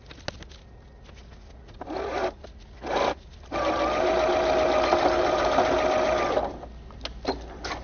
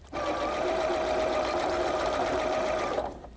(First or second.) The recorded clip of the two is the first